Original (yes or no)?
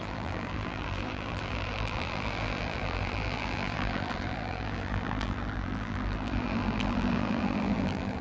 no